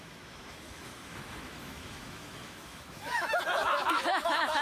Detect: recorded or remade remade